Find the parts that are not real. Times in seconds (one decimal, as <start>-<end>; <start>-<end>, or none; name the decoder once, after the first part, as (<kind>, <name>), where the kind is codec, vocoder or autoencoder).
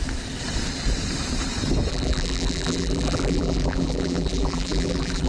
1.9-5.3 (vocoder, BigVGAN v2)